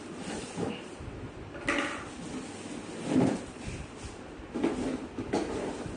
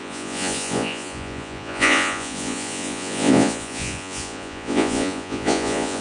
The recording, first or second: first